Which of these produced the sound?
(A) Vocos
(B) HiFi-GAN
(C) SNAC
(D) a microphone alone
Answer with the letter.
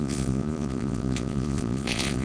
A